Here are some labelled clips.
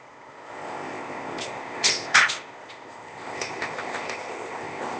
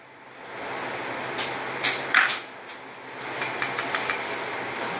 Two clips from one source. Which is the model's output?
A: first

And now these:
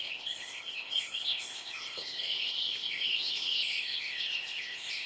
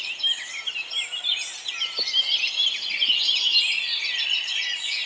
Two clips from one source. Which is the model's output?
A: first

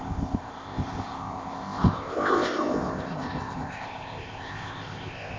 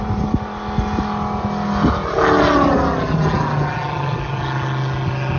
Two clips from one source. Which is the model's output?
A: first